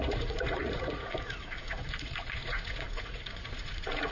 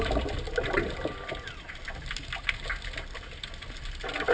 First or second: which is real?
second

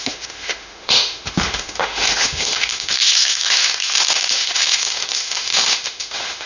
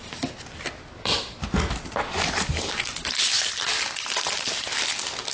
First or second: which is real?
second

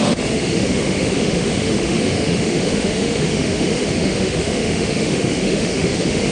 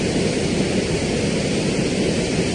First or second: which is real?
second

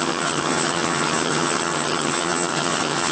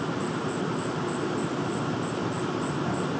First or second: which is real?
second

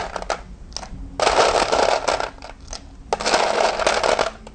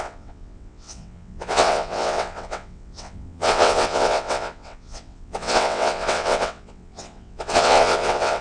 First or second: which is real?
first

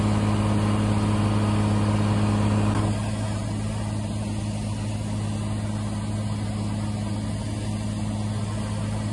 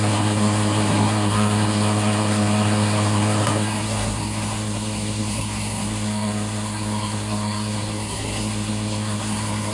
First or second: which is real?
first